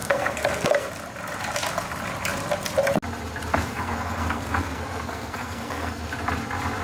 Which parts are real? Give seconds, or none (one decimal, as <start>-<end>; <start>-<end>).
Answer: 0.9-3.5; 6.0-6.8